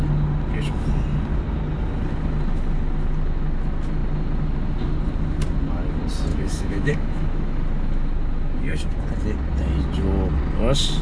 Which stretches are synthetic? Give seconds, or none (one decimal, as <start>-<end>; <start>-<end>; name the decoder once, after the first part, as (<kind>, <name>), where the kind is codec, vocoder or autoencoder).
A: 6.3-7.6 (autoencoder, DAC-VAE)